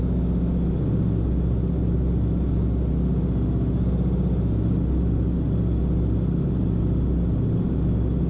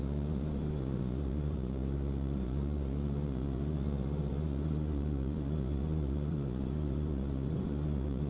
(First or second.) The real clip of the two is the first